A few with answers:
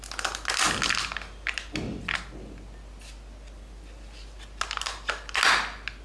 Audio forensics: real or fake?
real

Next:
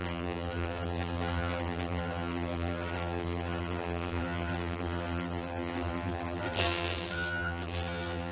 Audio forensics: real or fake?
fake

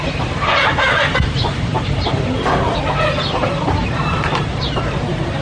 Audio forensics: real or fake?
fake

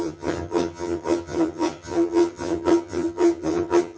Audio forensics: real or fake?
fake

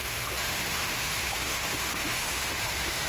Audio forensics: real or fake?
fake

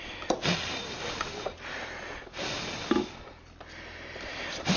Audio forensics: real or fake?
real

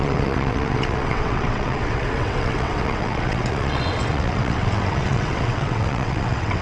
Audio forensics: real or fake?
fake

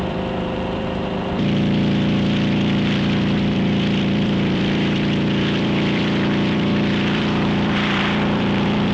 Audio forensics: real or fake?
fake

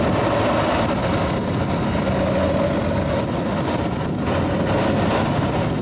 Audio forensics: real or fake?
real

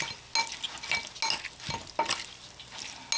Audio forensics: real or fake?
real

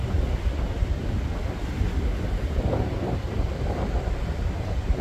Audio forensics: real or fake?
real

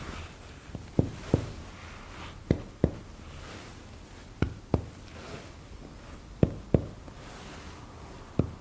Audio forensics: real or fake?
real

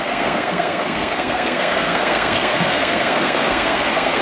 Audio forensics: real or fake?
fake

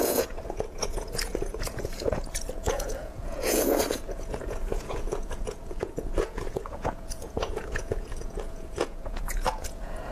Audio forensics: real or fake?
fake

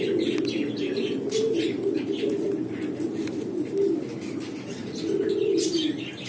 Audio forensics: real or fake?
real